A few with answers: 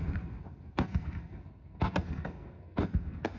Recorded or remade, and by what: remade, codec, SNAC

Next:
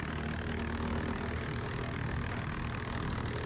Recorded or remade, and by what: recorded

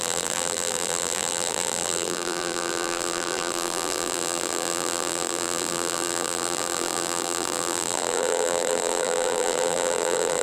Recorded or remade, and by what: remade, vocoder, BigVGAN v2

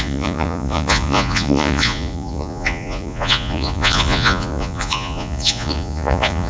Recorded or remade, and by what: remade, vocoder, Vocos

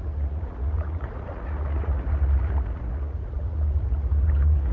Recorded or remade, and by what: remade, vocoder, Vocos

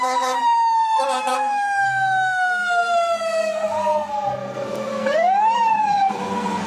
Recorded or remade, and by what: remade, codec, SNAC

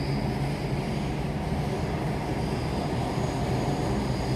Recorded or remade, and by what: recorded